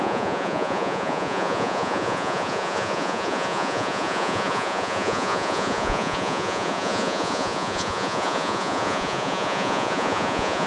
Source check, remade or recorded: remade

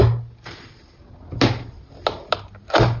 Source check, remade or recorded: recorded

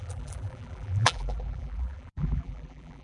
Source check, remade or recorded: remade